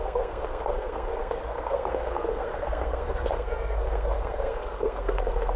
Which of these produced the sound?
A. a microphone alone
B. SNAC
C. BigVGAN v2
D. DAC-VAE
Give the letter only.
B